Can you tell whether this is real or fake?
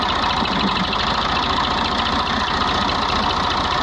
real